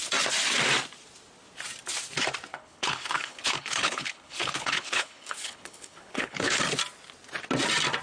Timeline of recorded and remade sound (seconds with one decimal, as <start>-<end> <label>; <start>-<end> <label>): 0.0-2.5 recorded; 2.5-6.6 remade; 6.6-8.0 recorded